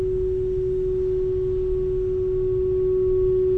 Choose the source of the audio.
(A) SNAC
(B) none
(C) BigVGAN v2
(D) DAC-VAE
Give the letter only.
B